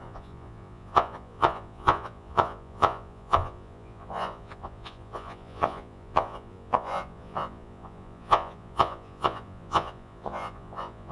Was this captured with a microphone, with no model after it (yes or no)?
no